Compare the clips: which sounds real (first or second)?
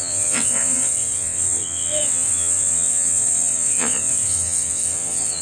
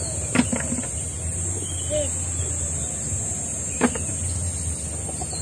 second